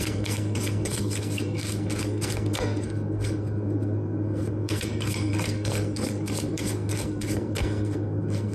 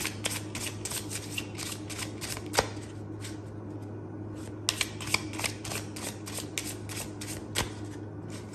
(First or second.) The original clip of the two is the second